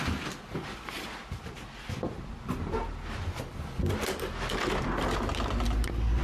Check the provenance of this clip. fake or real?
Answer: real